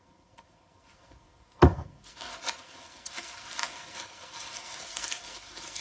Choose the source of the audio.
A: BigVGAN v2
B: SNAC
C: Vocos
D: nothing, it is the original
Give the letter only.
B